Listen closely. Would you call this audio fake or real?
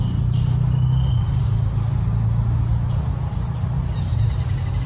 real